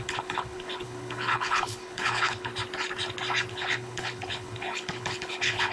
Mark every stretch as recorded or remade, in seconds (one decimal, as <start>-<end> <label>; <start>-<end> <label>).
0.0-2.5 remade; 2.5-3.5 recorded; 3.5-5.7 remade